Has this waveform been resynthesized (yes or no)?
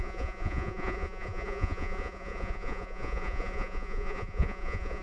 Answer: yes